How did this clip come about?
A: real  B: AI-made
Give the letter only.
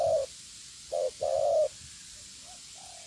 A